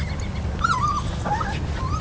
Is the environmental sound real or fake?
real